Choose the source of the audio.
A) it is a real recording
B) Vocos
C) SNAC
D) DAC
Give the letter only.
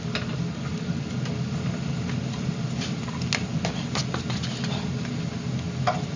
A